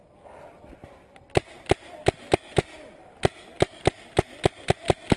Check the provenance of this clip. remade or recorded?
recorded